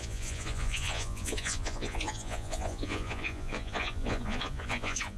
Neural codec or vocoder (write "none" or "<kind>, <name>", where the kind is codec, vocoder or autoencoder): vocoder, Vocos